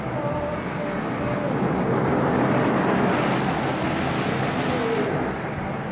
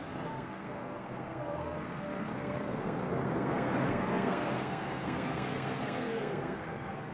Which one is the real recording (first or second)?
first